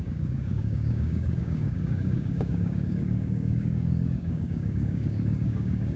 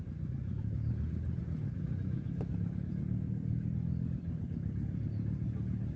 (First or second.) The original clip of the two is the second